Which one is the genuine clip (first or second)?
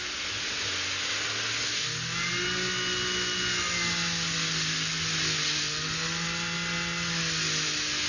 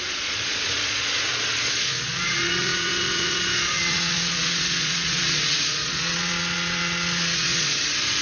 first